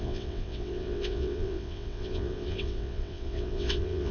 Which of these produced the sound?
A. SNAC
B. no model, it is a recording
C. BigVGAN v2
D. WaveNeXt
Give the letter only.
D